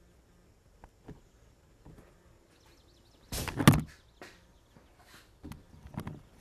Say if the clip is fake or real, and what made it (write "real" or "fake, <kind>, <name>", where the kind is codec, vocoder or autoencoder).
real